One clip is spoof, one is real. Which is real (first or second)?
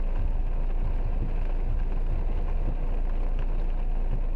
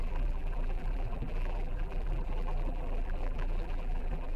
first